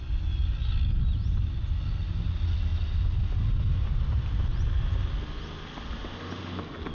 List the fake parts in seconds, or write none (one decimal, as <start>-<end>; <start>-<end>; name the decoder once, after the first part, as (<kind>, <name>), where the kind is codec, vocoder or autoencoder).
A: none